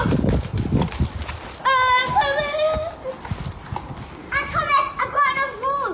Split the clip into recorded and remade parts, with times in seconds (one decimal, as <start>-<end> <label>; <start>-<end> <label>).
0.0-5.9 recorded